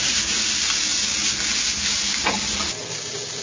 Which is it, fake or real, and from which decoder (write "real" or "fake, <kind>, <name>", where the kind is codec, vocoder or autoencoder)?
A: real